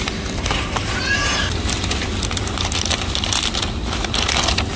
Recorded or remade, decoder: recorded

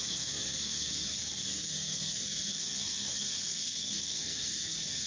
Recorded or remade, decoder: remade, codec, SNAC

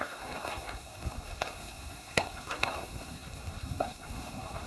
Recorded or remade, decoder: remade, codec, SNAC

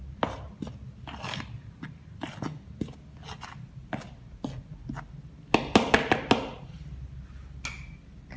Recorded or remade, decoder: recorded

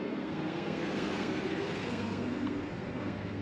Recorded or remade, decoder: remade, codec, SNAC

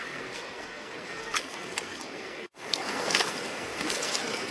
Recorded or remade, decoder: remade, codec, SNAC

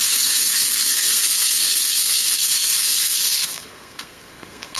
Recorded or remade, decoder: remade, codec, SNAC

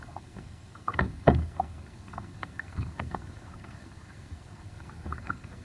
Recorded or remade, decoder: remade, codec, SNAC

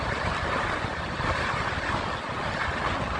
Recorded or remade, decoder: recorded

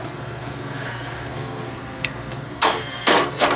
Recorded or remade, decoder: remade, codec, SNAC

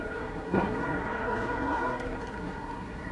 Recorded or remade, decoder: remade, codec, SNAC